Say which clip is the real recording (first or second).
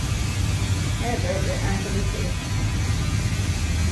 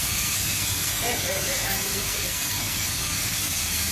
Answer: first